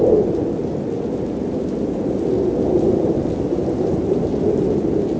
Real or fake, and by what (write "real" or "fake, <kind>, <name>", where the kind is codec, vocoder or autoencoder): real